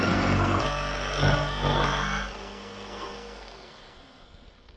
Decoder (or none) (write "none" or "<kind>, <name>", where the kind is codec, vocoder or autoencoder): codec, SNAC